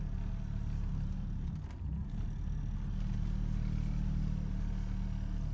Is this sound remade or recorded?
recorded